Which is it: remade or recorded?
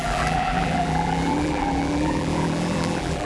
remade